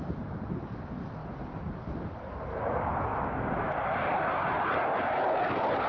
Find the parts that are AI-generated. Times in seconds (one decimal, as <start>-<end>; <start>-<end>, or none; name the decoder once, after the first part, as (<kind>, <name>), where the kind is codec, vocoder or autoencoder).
none